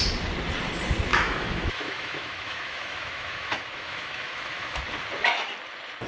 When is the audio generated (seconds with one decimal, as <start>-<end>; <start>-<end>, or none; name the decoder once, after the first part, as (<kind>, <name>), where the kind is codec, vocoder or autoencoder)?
1.1-4.8 (autoencoder, DAC-VAE)